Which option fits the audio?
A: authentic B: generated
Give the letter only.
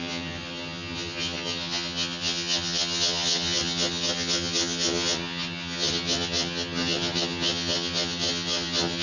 B